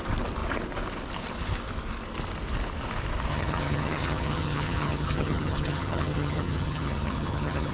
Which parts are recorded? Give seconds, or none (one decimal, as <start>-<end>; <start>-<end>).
0.0-3.3